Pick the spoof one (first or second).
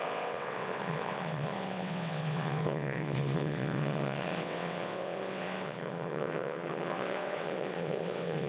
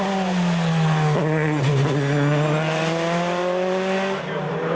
first